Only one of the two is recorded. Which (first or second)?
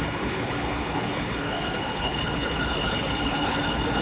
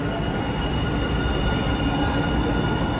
second